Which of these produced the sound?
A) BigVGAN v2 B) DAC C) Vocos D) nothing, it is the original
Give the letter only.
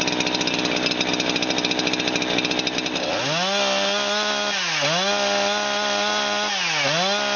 D